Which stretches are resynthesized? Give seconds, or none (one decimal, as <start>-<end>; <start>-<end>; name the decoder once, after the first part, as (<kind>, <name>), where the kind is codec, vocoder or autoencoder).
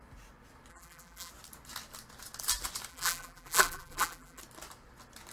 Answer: 0.7-1.3 (vocoder, BigVGAN v2); 2.9-4.4